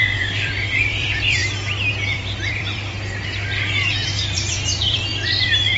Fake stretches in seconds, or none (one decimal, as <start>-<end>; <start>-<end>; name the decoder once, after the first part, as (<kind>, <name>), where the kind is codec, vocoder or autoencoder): 0.0-1.4 (vocoder, BigVGAN v2); 1.9-5.8